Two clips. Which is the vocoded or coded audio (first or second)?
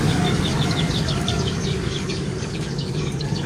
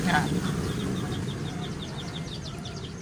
first